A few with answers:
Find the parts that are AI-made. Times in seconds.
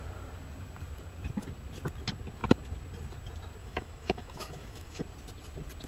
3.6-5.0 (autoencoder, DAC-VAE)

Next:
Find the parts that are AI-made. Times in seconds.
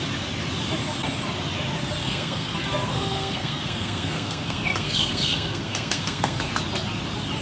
2.0-6.4 (codec, SNAC)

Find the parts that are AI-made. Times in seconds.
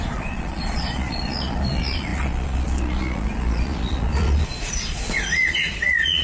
0.0-6.2 (vocoder, Vocos)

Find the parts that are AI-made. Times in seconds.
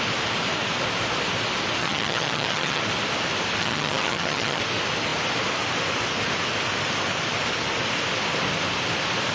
1.8-2.8 (vocoder, HiFi-GAN); 3.6-4.6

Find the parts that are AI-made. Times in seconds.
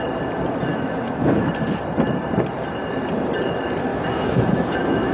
0.7-1.5 (autoencoder, DAC-VAE); 3.9-5.1